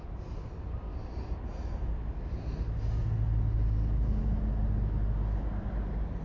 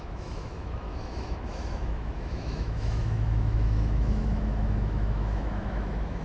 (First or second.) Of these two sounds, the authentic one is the first